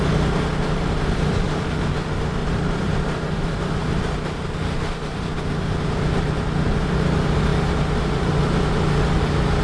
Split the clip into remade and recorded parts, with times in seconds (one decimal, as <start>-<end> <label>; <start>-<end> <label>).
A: 0.0-2.4 recorded; 2.4-5.5 remade; 5.5-7.5 recorded; 7.5-8.4 remade; 8.4-9.6 recorded